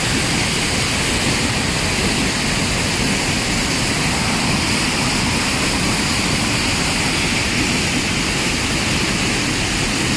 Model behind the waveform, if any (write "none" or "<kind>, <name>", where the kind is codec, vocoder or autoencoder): none